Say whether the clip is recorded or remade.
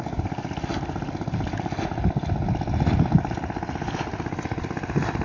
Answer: recorded